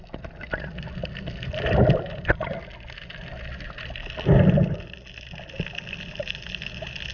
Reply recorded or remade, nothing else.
recorded